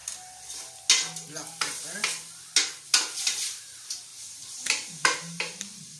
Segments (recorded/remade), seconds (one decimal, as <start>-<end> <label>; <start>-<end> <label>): 0.0-3.6 recorded; 3.6-6.0 remade